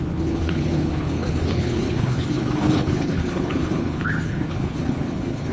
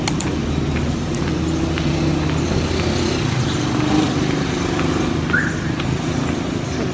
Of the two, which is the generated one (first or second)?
first